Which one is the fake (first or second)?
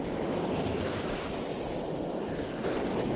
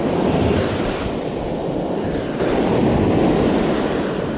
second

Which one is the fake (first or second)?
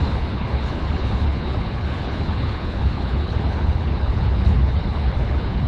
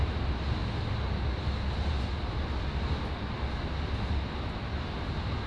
first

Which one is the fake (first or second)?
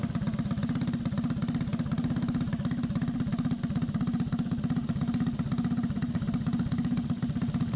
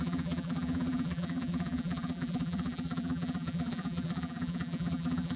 second